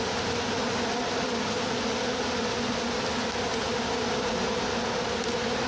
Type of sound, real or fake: real